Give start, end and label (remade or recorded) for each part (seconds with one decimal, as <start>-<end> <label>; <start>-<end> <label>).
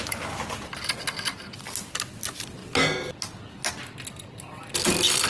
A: 0.0-5.3 recorded